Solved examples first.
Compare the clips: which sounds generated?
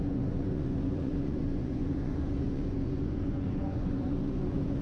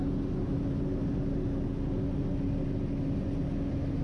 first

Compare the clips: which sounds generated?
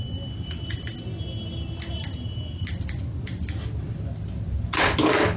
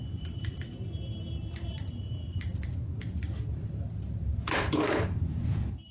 second